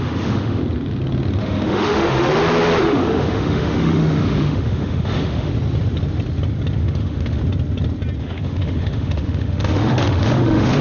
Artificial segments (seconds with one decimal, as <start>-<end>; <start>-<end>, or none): 0.0-0.6; 1.4-2.3; 2.8-5.5; 6.8-7.4; 8.2-10.8

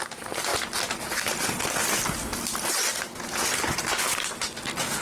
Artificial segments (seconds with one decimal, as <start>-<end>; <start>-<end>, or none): none